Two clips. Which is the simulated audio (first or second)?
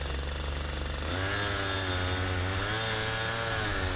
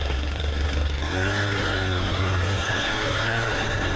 second